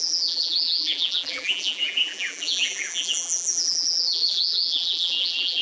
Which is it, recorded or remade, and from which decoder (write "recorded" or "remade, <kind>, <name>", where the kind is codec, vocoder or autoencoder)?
remade, vocoder, BigVGAN v2